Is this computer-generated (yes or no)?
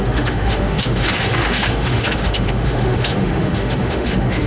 yes